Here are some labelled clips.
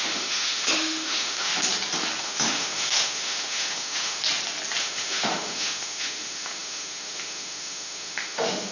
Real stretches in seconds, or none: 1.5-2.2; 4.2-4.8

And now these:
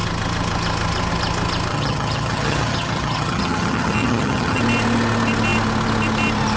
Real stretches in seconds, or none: 0.0-1.7; 4.6-6.6

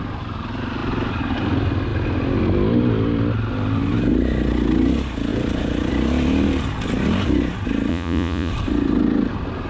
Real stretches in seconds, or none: 0.0-7.9; 8.5-9.7

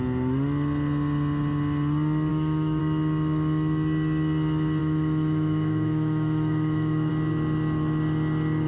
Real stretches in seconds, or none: 0.0-2.3; 2.8-4.8; 7.1-8.7

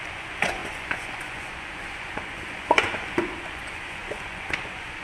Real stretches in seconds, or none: none